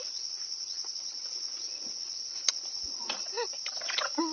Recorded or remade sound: recorded